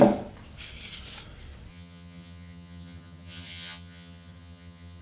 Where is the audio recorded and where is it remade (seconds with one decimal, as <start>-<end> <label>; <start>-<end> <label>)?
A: 0.0-1.7 recorded; 1.7-5.0 remade